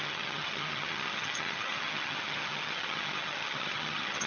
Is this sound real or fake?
fake